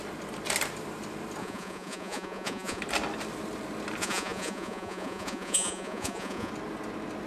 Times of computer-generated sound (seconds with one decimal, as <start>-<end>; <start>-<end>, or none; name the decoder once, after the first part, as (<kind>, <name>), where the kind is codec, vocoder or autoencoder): 1.4-2.8 (vocoder, Vocos); 4.0-6.5